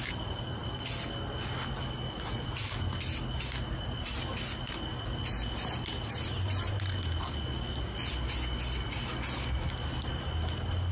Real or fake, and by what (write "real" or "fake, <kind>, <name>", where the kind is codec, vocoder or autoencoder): real